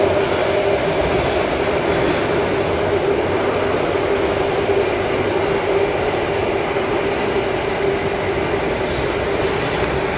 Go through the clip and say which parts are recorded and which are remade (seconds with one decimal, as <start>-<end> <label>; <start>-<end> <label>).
0.0-10.2 recorded